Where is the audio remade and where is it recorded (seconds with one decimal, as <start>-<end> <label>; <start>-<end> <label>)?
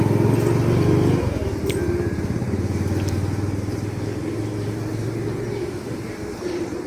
0.0-6.9 recorded